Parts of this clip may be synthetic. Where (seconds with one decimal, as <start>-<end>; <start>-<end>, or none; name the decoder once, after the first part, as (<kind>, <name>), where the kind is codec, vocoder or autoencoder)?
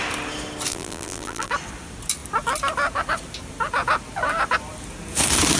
0.7-1.5 (vocoder, BigVGAN v2)